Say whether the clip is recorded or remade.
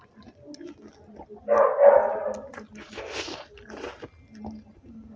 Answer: recorded